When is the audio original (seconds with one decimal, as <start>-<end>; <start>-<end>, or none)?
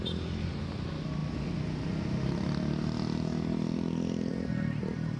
0.0-5.2